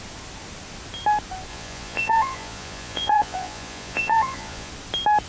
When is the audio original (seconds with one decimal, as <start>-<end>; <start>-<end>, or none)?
0.0-1.5; 4.7-5.3